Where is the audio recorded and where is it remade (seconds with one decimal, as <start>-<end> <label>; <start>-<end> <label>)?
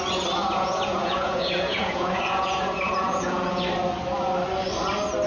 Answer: 0.0-0.4 recorded; 0.4-3.6 remade; 3.6-5.3 recorded